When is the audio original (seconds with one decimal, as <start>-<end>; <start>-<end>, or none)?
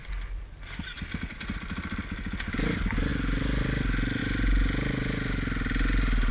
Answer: 1.4-6.3